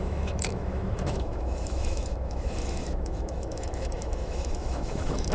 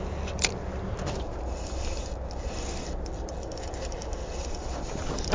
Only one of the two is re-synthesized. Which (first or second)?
first